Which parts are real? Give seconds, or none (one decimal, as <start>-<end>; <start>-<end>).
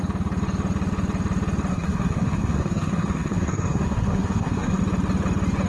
0.0-1.7; 4.8-5.7